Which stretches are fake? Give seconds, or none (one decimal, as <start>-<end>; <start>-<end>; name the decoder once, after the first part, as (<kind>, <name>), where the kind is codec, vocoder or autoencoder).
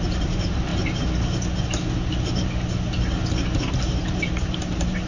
0.0-0.7 (vocoder, BigVGAN v2); 3.7-5.1